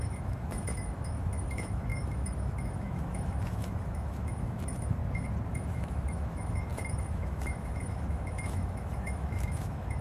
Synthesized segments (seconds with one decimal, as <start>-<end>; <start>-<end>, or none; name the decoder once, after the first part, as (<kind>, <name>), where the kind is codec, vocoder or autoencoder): 0.0-5.0 (autoencoder, DAC-VAE); 5.5-10.0